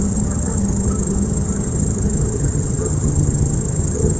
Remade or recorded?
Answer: remade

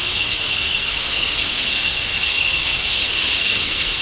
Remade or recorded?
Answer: remade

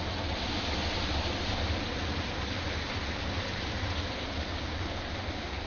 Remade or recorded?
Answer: recorded